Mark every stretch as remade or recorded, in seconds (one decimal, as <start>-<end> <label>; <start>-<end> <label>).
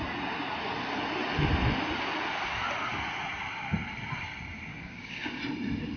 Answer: 0.0-4.7 recorded; 4.7-5.4 remade; 5.4-6.0 recorded